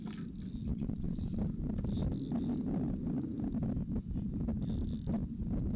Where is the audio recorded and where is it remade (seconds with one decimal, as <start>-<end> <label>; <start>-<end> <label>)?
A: 0.0-0.7 recorded; 0.7-1.4 remade; 1.4-5.8 recorded